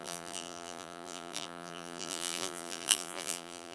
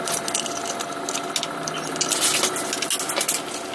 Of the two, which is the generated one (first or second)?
first